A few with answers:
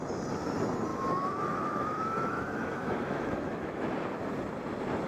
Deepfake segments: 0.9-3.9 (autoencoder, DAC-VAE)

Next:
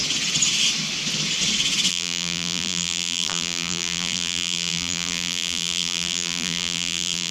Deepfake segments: 1.9-7.3 (vocoder, BigVGAN v2)